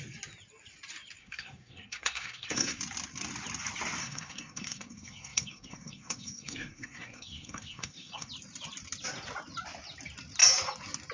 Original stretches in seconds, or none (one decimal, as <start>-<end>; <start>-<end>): 0.0-1.2; 2.8-4.0; 8.3-11.1